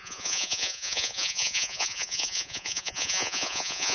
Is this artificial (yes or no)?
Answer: yes